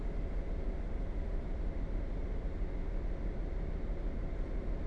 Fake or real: real